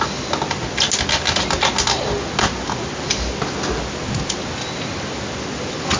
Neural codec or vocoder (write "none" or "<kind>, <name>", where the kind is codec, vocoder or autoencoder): none